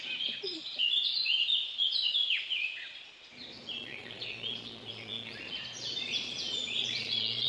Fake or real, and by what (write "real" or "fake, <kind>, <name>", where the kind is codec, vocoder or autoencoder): fake, vocoder, Vocos